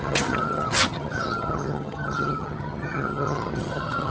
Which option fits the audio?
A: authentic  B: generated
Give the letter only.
B